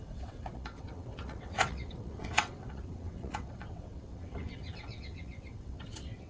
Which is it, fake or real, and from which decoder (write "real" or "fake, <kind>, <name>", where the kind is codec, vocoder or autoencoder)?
fake, vocoder, WaveNeXt